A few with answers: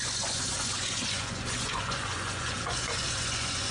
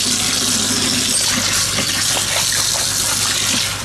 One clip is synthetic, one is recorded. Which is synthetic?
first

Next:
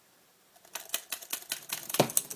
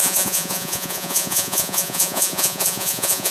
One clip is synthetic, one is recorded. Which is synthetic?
second